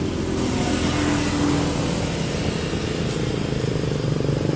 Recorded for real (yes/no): yes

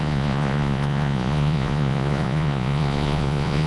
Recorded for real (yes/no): no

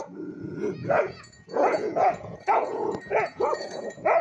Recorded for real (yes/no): no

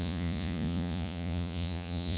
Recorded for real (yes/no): no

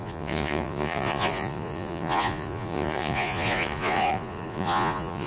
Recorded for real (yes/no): no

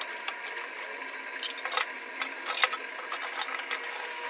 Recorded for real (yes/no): yes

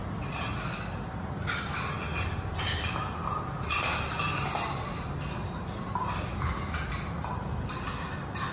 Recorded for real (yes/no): yes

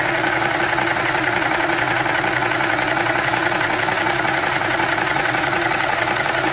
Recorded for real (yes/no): no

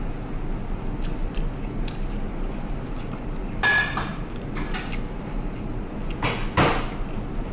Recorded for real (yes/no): yes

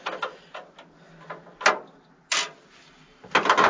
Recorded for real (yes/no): yes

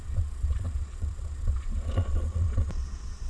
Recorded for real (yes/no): no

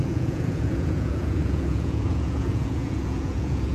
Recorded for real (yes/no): no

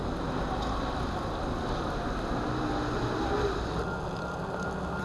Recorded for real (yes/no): yes